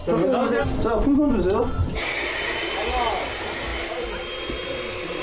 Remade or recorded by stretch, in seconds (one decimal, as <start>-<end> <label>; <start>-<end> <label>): 0.0-5.2 recorded